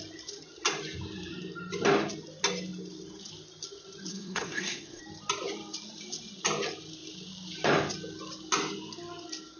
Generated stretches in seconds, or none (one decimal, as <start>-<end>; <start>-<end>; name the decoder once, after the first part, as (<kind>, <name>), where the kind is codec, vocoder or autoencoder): 4.1-5.0 (codec, SNAC)